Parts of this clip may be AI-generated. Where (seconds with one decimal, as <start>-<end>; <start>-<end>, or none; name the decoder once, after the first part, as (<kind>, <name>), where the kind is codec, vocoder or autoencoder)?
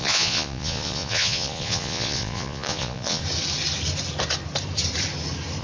0.0-3.2 (vocoder, Vocos)